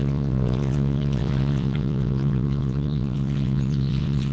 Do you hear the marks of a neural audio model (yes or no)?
yes